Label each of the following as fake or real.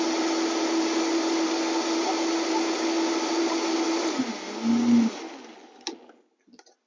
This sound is real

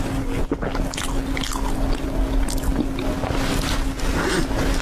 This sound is real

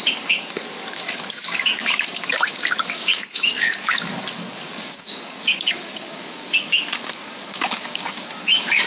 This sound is fake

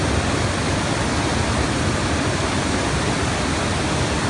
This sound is real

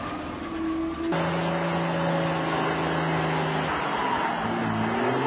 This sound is real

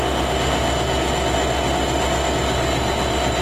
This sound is real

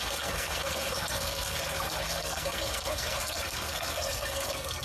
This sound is fake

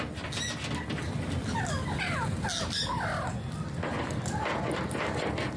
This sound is real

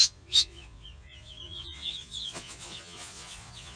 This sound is fake